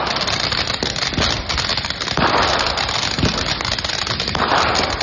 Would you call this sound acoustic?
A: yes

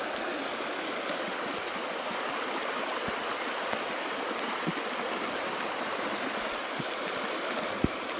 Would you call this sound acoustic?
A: yes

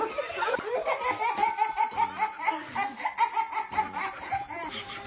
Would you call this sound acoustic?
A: yes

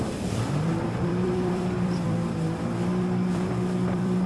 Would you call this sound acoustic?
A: no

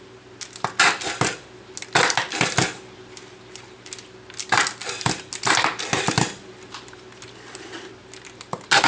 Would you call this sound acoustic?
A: yes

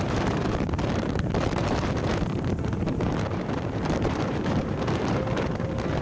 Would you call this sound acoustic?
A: no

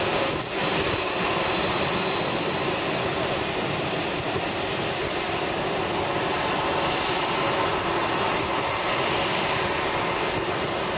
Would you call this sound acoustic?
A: yes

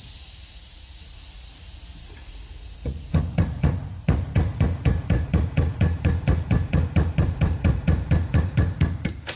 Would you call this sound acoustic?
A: no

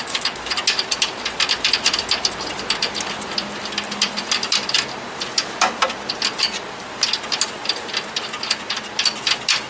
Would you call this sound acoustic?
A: yes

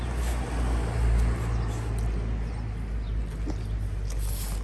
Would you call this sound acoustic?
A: yes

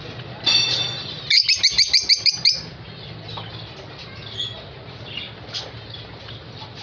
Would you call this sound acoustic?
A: yes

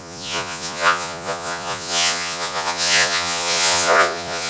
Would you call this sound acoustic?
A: no